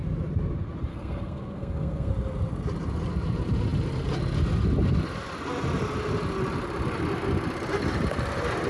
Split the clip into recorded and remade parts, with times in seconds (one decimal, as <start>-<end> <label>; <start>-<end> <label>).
0.0-0.9 recorded; 0.9-2.1 remade; 2.1-8.7 recorded